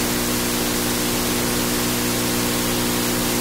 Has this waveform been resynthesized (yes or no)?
no